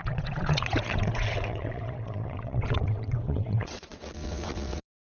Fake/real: fake